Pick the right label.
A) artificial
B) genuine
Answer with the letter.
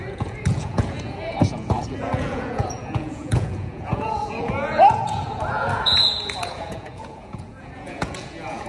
A